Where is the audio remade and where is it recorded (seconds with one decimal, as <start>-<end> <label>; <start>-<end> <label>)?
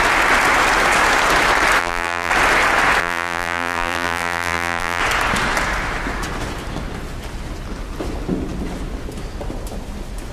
0.0-1.8 recorded; 1.8-2.3 remade; 2.3-3.0 recorded; 3.0-5.0 remade; 5.0-10.3 recorded